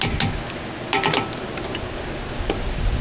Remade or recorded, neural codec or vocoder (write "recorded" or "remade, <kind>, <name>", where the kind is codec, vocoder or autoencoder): recorded